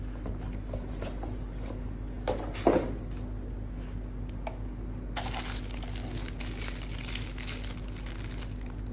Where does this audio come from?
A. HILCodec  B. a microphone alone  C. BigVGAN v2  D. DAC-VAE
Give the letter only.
B